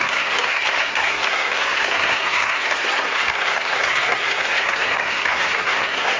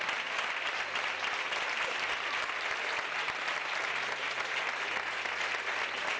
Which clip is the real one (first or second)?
second